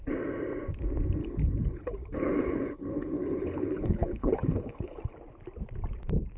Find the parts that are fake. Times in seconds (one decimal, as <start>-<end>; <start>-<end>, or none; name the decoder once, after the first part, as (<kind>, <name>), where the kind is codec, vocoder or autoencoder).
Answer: 1.2-5.0 (codec, HILCodec)